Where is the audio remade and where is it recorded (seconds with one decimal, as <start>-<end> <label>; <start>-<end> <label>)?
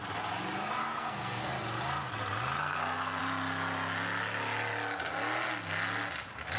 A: 0.0-0.8 recorded; 0.8-1.5 remade; 1.5-2.6 recorded; 2.6-3.2 remade; 3.2-6.6 recorded